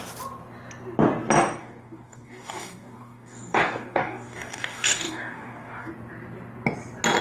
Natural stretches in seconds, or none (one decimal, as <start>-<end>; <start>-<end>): 0.0-1.6; 5.9-7.2

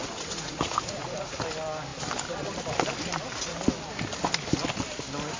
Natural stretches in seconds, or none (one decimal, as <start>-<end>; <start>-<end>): 1.4-5.4

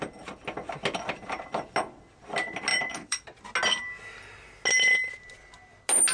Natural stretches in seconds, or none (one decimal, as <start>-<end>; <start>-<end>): 0.0-2.7; 3.4-6.1

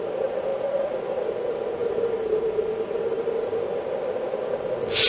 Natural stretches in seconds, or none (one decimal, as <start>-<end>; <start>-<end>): 0.0-5.1

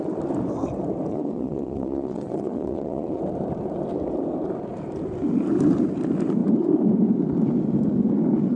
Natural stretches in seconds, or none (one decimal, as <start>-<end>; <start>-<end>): 0.0-1.1; 3.2-8.6

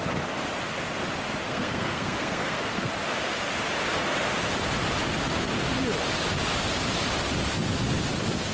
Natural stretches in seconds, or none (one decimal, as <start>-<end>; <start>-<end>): 0.0-1.5; 2.9-8.5